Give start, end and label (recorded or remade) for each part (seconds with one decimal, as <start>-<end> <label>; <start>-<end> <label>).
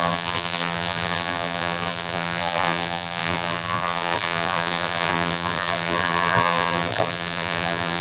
0.0-8.0 remade